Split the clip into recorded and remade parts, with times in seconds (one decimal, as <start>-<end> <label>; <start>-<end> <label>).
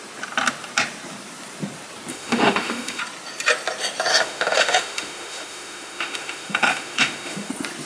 0.0-2.1 recorded; 2.1-3.0 remade; 3.0-4.1 recorded; 4.1-7.5 remade; 7.5-7.9 recorded